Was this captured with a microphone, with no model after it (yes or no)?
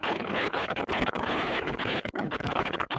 no